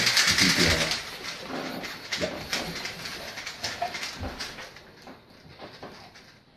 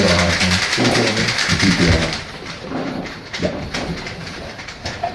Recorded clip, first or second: first